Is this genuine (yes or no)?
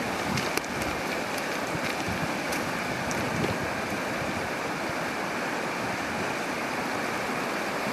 yes